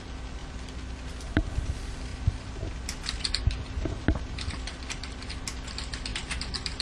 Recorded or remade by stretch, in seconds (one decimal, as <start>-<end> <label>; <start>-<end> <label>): 0.0-0.4 recorded; 0.4-1.1 remade; 1.1-2.1 recorded; 2.1-3.4 remade; 3.4-6.1 recorded; 6.1-6.8 remade